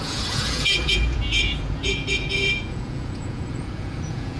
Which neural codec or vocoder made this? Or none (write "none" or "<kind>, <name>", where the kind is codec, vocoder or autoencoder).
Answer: vocoder, Vocos